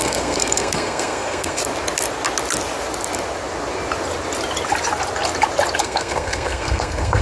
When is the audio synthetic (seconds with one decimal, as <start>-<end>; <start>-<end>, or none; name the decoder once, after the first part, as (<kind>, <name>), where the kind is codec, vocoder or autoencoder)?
0.0-1.6 (codec, SNAC); 5.8-7.2